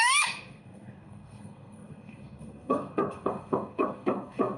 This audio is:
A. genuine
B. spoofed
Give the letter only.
B